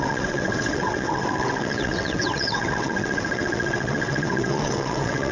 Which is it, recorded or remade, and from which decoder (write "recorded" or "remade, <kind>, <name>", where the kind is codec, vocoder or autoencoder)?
remade, vocoder, WaveNeXt